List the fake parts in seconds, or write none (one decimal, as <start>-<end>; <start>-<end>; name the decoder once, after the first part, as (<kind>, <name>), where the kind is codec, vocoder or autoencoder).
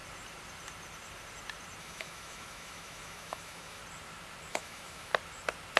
1.8-3.8 (autoencoder, DAC-VAE); 4.5-5.1